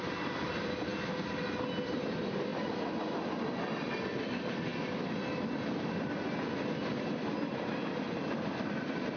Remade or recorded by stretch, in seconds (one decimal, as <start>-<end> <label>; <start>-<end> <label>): 0.0-9.2 recorded